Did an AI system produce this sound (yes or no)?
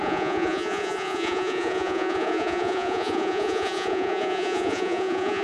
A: yes